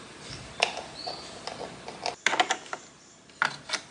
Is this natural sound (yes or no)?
yes